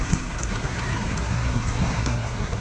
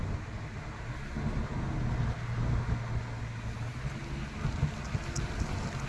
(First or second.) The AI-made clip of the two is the first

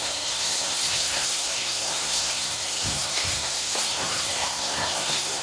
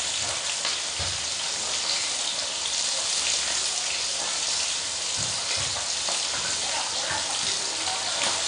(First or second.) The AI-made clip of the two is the first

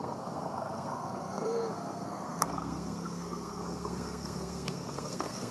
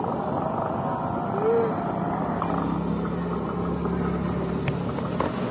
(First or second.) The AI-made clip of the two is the first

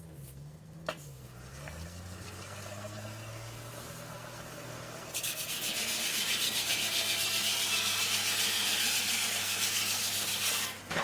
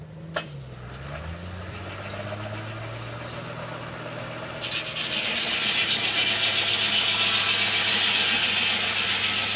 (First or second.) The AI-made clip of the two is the first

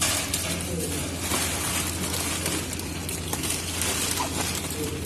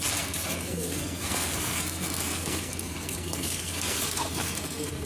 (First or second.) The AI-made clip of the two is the second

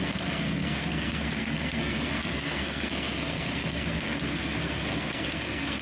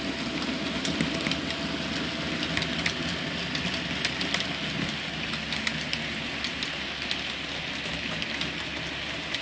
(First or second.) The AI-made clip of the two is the first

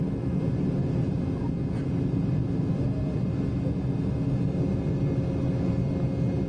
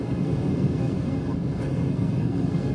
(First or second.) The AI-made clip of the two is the second